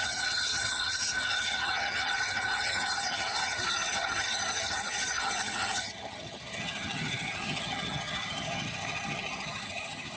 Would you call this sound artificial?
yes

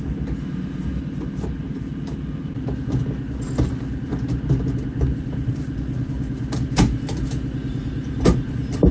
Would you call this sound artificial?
no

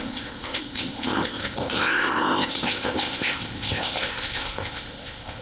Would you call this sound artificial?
yes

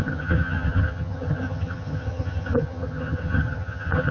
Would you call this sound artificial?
yes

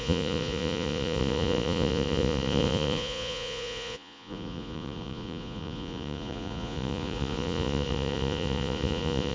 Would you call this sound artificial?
yes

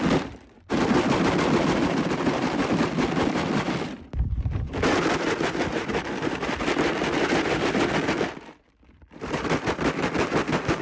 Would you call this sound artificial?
yes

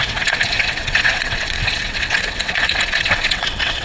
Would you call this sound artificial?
yes